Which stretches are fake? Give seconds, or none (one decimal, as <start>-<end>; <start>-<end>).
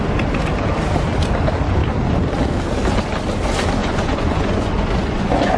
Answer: 3.8-5.6